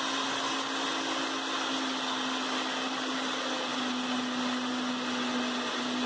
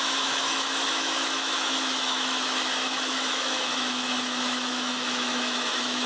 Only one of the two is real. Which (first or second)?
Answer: first